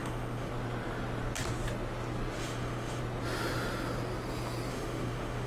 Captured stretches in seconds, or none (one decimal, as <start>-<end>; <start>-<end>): 0.5-2.4; 3.0-4.7